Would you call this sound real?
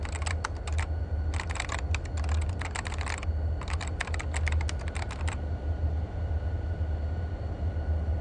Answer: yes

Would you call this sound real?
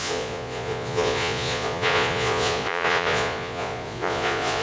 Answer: no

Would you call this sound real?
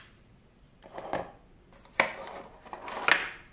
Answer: yes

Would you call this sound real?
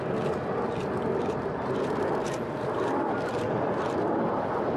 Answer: yes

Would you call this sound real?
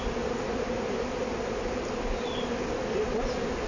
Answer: yes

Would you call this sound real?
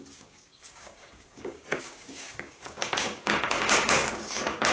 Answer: no